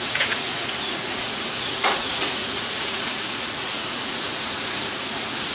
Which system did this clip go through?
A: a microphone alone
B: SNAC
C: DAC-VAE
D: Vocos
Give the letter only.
D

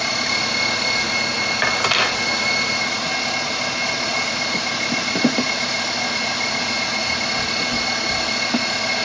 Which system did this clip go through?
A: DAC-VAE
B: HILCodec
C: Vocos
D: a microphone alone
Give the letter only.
D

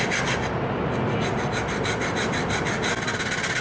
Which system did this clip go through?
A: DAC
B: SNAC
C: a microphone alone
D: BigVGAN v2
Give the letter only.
C